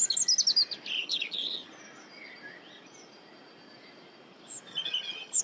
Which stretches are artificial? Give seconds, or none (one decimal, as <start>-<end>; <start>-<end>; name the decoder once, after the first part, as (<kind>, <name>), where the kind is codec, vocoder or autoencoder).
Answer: 1.0-1.7 (vocoder, HiFi-GAN); 4.7-5.4